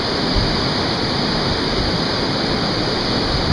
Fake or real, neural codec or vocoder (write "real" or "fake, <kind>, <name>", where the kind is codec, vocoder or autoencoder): real